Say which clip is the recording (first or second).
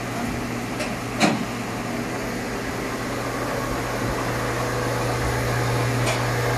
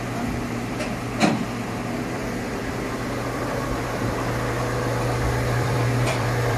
first